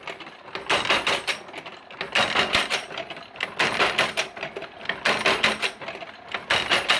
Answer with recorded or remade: recorded